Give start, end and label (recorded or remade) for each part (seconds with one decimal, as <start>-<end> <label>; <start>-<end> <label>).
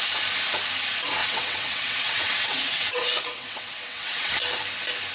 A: 0.0-1.2 recorded; 1.2-4.3 remade; 4.3-5.1 recorded